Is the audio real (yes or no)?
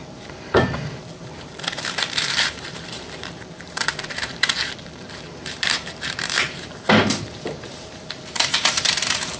no